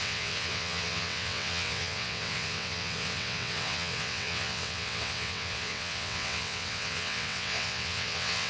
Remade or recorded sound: remade